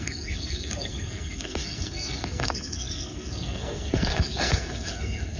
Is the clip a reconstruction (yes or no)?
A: yes